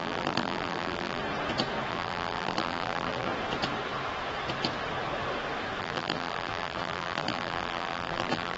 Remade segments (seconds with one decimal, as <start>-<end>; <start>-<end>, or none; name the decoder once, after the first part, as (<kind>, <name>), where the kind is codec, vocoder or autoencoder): 0.0-1.2 (vocoder, BigVGAN v2); 1.9-3.3; 5.8-8.6